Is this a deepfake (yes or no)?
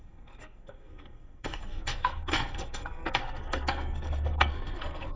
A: yes